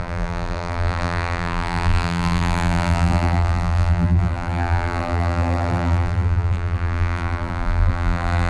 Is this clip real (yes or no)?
no